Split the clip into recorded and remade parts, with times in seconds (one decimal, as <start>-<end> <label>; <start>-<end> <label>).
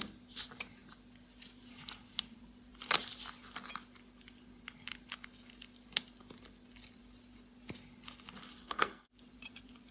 0.0-8.6 recorded; 8.6-9.1 remade; 9.1-9.9 recorded